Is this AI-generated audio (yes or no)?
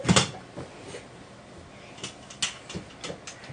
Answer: no